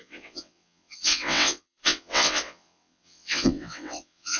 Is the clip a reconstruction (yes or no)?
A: yes